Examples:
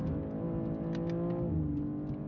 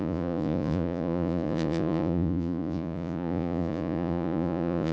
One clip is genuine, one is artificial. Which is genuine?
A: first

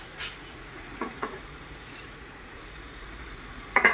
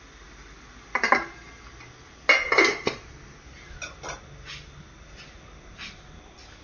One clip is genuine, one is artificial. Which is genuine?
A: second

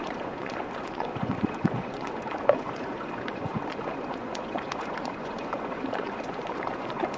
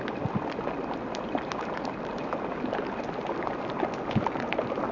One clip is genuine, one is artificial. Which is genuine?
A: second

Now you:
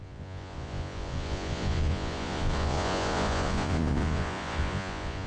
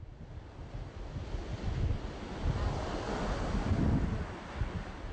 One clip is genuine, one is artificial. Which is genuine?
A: second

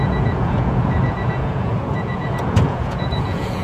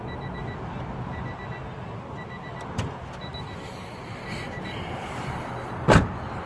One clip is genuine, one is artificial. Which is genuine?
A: second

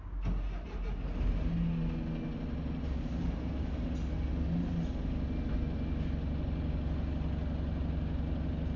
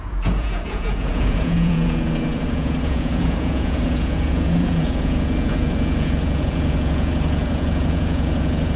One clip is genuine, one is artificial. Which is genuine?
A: first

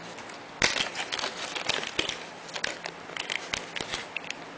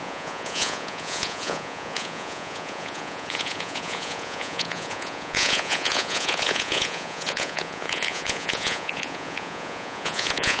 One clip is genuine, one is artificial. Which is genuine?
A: first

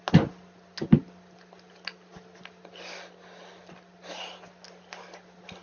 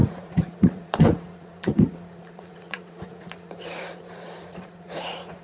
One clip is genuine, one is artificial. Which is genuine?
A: first